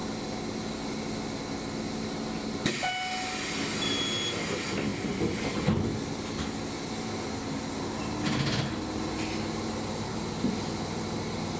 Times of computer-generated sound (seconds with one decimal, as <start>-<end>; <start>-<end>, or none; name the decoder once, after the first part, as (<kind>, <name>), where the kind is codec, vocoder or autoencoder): none